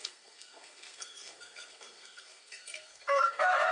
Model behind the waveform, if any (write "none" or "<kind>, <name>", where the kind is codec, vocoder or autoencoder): codec, SNAC